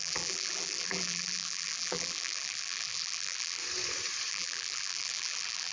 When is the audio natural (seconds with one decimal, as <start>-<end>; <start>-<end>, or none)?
3.6-4.3